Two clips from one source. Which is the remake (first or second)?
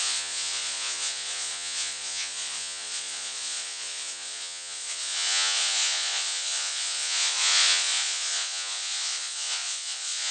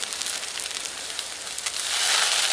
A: first